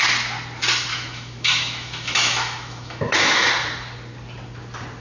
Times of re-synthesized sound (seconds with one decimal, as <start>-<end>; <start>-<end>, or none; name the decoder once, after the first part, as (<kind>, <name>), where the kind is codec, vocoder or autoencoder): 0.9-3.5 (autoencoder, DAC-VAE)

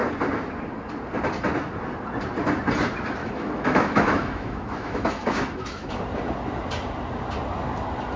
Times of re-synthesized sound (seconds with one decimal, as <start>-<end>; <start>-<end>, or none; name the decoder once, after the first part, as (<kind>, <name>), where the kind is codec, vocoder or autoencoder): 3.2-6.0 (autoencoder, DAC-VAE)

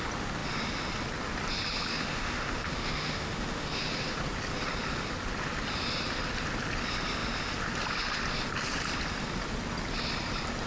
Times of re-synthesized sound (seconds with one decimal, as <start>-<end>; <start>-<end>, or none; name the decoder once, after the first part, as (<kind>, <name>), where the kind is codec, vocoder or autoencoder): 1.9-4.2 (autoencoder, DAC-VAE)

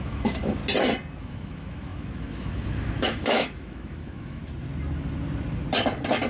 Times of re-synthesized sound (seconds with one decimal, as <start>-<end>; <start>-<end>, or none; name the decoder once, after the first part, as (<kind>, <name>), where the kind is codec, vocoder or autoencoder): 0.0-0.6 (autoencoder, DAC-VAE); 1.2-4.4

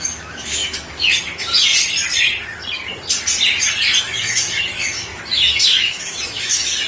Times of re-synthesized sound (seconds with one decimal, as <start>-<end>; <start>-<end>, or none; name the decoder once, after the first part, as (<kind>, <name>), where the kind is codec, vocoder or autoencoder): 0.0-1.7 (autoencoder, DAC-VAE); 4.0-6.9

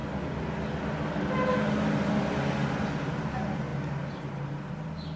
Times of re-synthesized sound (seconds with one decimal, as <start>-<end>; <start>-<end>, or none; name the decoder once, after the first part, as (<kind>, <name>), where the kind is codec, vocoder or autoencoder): none

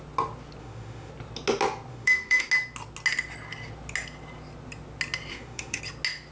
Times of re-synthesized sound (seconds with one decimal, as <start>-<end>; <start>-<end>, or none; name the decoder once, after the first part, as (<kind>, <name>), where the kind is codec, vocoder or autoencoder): 0.6-1.1 (autoencoder, DAC-VAE); 1.9-2.5; 5.3-5.8

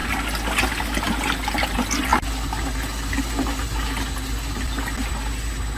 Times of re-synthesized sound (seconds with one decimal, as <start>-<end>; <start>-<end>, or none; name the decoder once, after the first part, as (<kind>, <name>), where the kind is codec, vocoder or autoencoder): none